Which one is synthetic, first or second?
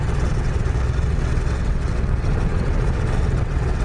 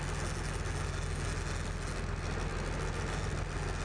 first